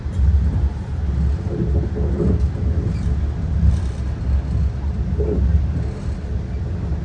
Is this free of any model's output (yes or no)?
yes